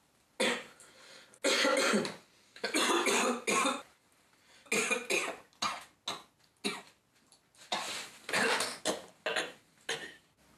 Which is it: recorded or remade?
recorded